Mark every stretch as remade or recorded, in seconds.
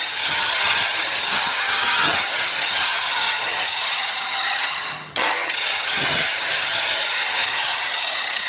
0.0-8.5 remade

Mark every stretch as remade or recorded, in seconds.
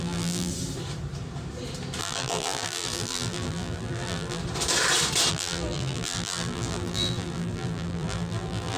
0.0-0.5 remade; 0.5-2.0 recorded; 2.0-4.4 remade; 4.4-5.3 recorded; 5.3-8.8 remade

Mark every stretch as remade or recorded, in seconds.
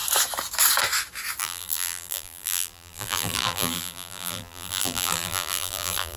0.0-1.4 recorded; 1.4-6.2 remade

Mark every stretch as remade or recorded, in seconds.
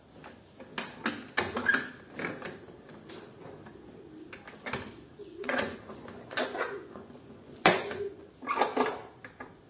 0.0-5.1 recorded; 5.1-8.3 remade; 8.3-9.7 recorded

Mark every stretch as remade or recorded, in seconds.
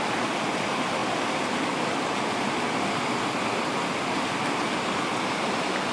0.0-1.0 recorded; 1.0-4.5 remade; 4.5-5.9 recorded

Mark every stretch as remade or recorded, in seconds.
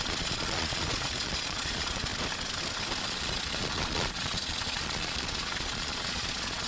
0.0-2.1 remade; 2.1-3.0 recorded; 3.0-6.7 remade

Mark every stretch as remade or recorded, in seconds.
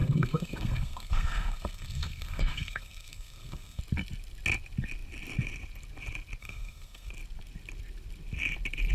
0.0-3.8 remade; 3.8-6.4 recorded; 6.4-7.1 remade; 7.1-8.9 recorded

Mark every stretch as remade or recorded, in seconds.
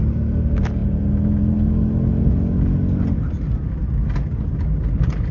0.0-5.3 recorded